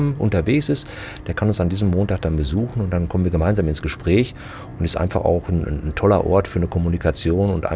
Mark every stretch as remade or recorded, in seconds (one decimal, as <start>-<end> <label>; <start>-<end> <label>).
0.0-7.8 recorded